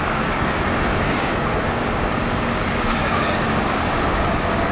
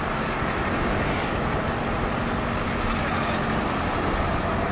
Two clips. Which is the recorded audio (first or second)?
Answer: second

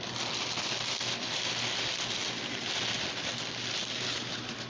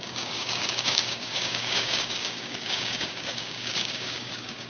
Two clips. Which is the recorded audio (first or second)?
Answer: first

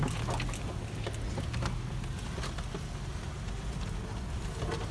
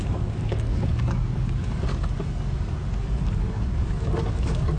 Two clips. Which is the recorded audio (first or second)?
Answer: first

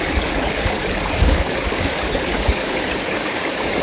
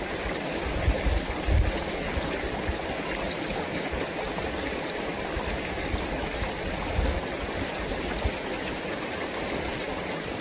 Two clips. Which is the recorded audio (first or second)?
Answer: second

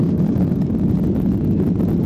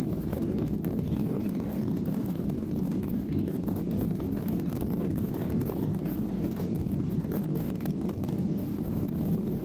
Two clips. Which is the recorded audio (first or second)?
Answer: first